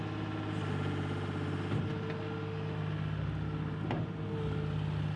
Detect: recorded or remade recorded